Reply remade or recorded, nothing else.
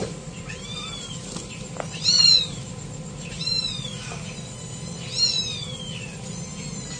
recorded